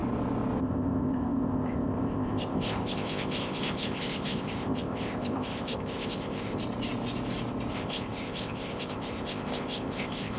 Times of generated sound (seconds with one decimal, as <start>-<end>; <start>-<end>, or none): 0.6-6.6; 7.7-10.4